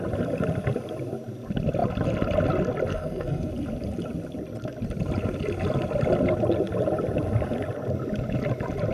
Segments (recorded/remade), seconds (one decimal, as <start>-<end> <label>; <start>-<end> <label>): 0.0-2.9 recorded; 2.9-3.5 remade; 3.5-8.9 recorded